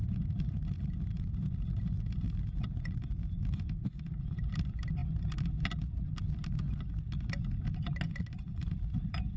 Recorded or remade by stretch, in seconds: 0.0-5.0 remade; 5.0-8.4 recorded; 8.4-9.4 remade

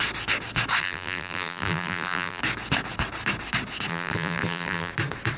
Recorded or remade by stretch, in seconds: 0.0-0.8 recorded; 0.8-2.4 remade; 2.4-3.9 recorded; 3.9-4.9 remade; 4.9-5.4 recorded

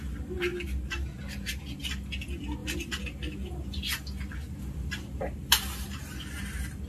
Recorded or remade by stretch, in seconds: 0.0-2.6 recorded; 2.6-6.4 remade; 6.4-6.9 recorded

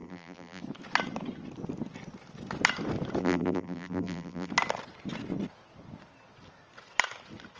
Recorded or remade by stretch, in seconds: 0.0-0.6 remade; 0.6-3.2 recorded; 3.2-4.5 remade; 4.5-7.6 recorded